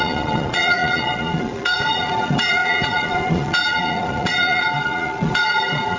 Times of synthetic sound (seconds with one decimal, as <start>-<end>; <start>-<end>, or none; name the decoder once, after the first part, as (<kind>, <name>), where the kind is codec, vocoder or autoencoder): 0.0-6.0 (vocoder, Vocos)